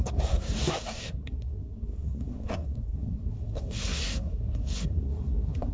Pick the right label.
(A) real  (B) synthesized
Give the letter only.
B